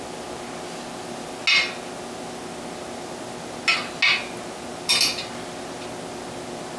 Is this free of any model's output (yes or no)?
yes